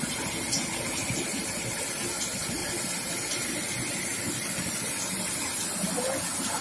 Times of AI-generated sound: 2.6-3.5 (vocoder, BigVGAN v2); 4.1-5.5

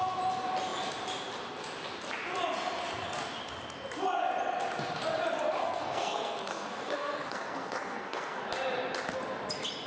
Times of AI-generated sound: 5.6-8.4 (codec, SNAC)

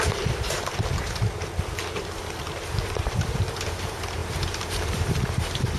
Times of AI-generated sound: 0.0-1.2 (vocoder, BigVGAN v2); 2.6-5.8

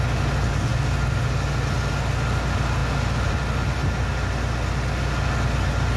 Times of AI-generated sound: none